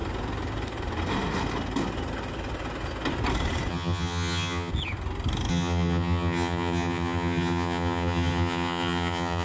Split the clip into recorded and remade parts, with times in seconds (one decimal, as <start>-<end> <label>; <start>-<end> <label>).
0.0-3.7 recorded; 3.7-4.7 remade; 4.7-5.5 recorded; 5.5-9.4 remade